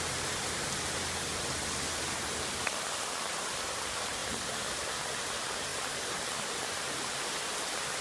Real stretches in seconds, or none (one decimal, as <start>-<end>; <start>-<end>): 0.0-8.0